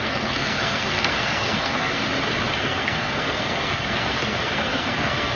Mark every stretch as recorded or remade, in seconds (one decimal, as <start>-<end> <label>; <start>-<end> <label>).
0.0-2.0 remade; 2.0-2.6 recorded; 2.6-5.4 remade